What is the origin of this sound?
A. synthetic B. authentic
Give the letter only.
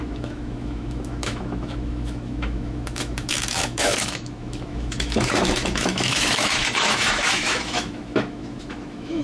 A